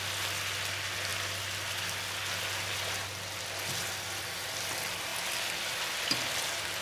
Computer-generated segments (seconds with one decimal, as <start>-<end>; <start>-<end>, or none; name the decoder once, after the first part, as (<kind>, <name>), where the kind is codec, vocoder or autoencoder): none